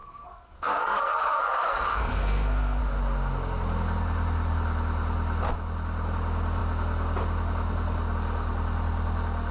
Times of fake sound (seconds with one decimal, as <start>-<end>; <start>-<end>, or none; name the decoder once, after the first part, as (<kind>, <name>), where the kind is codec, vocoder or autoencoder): 0.0-2.8 (codec, SNAC)